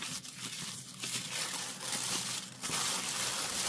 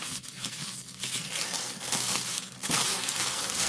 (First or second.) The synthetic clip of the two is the second